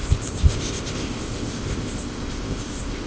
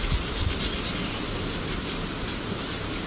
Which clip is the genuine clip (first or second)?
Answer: second